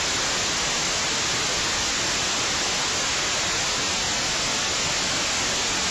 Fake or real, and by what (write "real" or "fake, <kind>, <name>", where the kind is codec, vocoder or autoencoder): real